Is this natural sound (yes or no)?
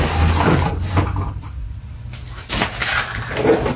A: yes